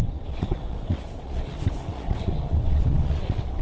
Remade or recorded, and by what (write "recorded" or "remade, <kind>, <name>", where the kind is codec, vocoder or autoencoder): remade, vocoder, WaveNeXt